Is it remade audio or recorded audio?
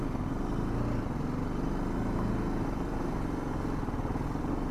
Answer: recorded